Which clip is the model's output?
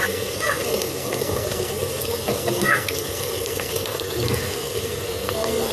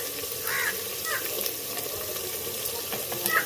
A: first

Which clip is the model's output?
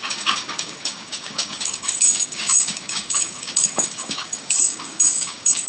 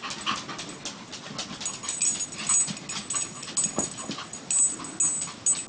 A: first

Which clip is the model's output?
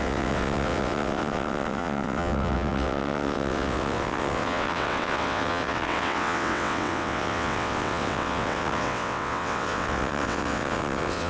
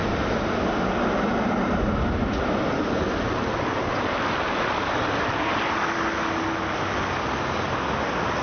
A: first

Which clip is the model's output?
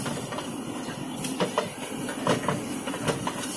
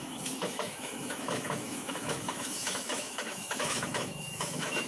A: second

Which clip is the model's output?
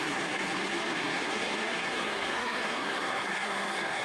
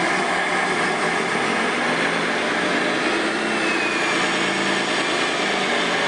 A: first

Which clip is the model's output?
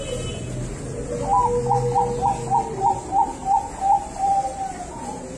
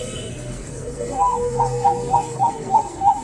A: second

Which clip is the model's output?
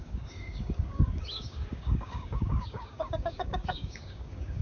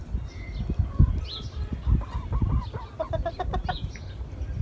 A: first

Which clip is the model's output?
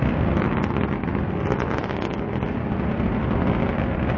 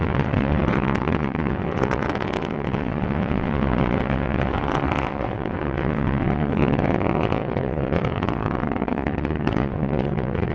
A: second